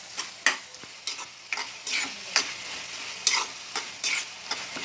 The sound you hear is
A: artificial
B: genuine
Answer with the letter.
B